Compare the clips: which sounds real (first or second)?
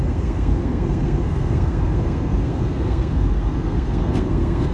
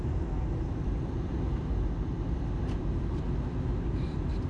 second